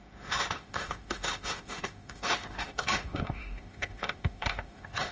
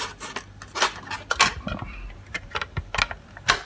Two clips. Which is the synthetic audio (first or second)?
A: first